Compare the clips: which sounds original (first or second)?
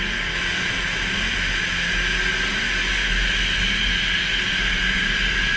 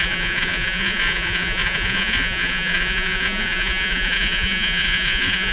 first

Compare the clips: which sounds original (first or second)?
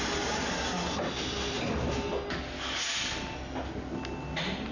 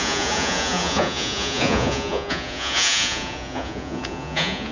first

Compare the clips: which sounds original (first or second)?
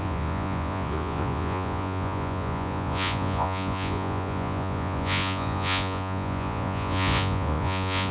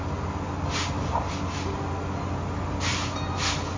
second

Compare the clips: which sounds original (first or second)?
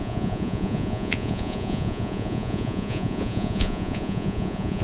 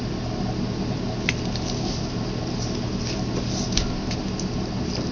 second